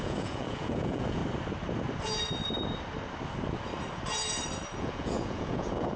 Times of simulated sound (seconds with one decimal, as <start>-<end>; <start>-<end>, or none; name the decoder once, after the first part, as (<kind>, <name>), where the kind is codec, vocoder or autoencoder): 0.0-1.2 (vocoder, Vocos); 4.8-6.0